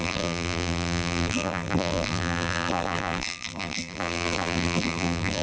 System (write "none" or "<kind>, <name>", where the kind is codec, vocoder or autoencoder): vocoder, BigVGAN v2